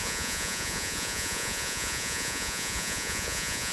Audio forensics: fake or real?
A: fake